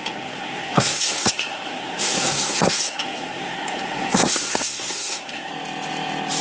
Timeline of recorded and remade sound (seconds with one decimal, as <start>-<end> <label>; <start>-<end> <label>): 0.0-5.5 remade; 5.5-6.4 recorded